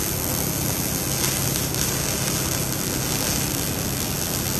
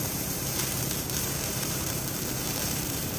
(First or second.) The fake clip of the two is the second